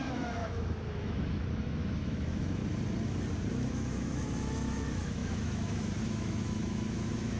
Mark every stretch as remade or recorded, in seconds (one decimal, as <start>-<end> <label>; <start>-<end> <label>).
0.0-2.6 remade; 2.6-3.5 recorded; 3.5-7.4 remade